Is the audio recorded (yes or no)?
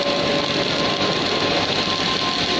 yes